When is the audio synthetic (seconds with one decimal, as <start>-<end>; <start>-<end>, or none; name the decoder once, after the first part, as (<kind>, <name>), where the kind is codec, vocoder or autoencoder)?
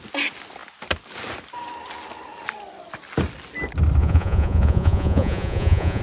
4.0-6.0 (vocoder, Vocos)